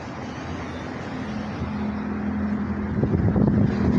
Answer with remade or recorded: recorded